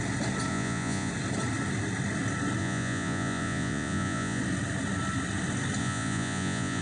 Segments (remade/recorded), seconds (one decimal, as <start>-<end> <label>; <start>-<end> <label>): 0.0-0.5 recorded; 0.5-1.1 remade; 1.1-2.6 recorded; 2.6-4.4 remade; 4.4-5.8 recorded; 5.8-6.8 remade